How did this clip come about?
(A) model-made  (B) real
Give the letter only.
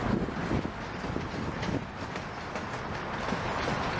B